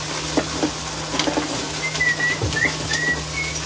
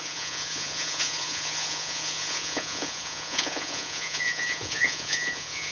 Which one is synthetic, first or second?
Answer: second